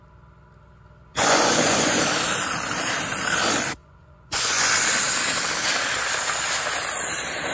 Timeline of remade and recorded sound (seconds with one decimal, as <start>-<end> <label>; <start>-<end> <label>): 0.0-1.1 recorded; 1.1-2.0 remade; 2.0-3.8 recorded; 3.8-4.7 remade; 4.7-7.5 recorded